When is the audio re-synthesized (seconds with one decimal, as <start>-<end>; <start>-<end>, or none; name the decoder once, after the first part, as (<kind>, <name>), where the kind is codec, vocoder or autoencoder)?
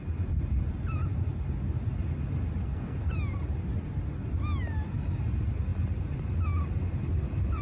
2.6-3.1 (codec, SNAC)